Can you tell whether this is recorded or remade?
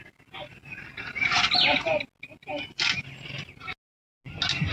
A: recorded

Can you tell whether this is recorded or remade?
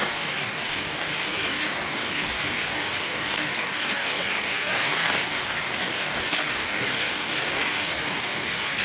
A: remade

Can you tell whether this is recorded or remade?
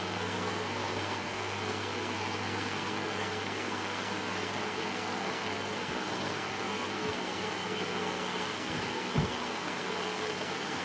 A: remade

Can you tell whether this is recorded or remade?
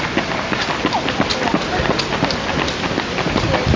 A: recorded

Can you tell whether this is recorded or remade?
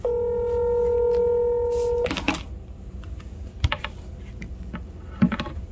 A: recorded